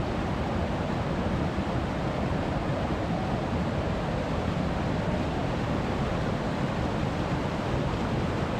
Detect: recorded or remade remade